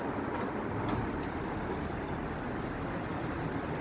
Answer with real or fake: real